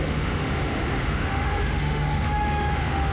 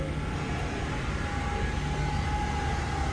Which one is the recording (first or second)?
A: second